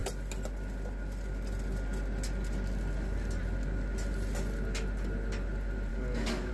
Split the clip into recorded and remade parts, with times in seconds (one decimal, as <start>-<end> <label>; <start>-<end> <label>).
0.0-5.9 recorded; 5.9-6.5 remade